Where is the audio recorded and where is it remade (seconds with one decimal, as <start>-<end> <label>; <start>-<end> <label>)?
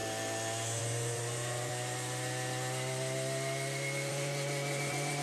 0.0-0.8 recorded; 0.8-1.7 remade; 1.7-4.1 recorded; 4.1-5.2 remade